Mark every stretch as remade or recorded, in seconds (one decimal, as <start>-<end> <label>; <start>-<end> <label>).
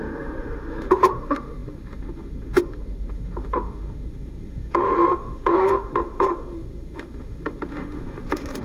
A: 0.0-8.6 remade